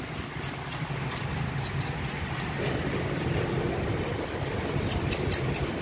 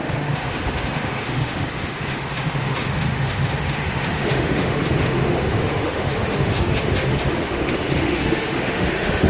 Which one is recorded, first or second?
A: first